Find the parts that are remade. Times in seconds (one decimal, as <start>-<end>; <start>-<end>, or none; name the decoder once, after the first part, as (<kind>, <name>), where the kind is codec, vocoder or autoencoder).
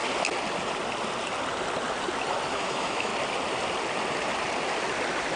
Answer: 2.5-3.1 (autoencoder, DAC-VAE)